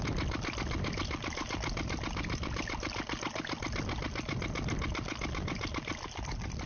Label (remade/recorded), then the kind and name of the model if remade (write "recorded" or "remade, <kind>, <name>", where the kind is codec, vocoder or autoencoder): recorded